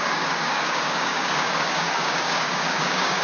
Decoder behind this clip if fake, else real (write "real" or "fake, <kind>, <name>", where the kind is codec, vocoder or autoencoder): fake, codec, DAC